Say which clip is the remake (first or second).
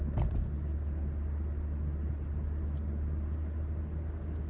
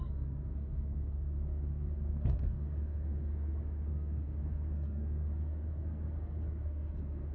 second